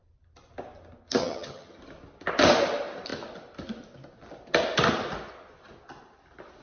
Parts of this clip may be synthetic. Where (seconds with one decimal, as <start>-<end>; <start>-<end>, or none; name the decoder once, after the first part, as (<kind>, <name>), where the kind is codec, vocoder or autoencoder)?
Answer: 1.2-1.8 (vocoder, HiFi-GAN)

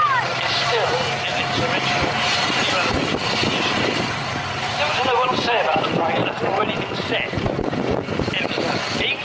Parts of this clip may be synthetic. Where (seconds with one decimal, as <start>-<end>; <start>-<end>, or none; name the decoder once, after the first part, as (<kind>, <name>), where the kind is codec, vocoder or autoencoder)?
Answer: none

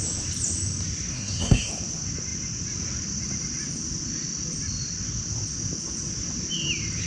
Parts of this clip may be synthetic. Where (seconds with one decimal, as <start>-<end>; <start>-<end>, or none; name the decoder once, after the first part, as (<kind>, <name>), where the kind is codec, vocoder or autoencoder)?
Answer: 1.1-1.7 (codec, SNAC)

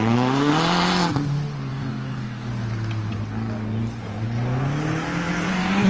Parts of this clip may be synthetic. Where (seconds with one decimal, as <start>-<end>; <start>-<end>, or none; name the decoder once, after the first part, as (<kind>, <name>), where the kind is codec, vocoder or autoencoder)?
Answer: 0.0-0.5 (codec, DAC); 1.7-2.5; 5.5-5.9

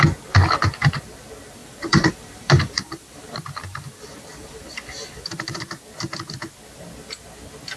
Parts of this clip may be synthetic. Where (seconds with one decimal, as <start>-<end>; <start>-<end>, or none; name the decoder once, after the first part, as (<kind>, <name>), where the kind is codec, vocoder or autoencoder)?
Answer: 1.6-5.6 (vocoder, BigVGAN v2)

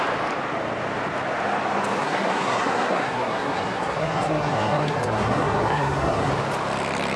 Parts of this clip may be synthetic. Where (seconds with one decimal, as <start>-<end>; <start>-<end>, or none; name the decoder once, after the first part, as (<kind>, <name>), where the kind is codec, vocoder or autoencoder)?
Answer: 2.0-6.3 (codec, SNAC)